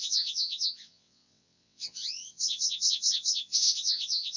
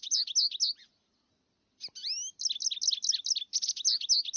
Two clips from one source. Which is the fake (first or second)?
first